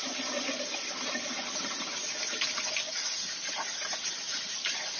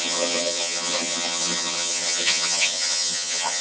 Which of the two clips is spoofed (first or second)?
second